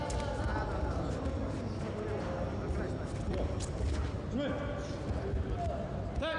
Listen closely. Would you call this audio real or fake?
real